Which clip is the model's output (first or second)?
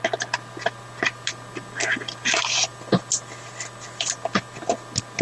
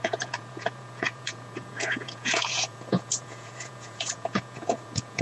second